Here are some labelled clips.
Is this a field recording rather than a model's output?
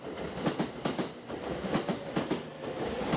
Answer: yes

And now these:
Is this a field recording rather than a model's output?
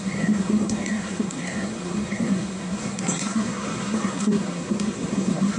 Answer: no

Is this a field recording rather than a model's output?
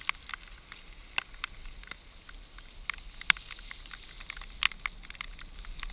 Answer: yes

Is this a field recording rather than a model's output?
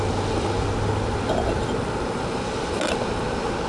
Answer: yes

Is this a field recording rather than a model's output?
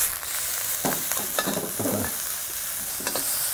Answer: yes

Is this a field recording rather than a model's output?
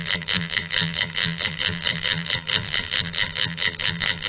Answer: no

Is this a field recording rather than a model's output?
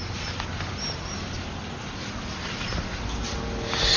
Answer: yes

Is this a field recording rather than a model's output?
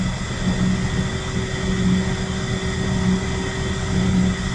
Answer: yes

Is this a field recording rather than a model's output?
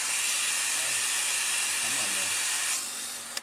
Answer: yes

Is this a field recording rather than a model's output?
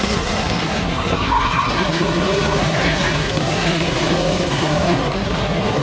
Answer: no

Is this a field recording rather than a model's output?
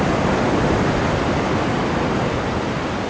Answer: yes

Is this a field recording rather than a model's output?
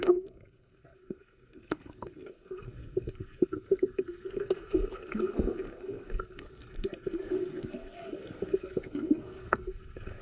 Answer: no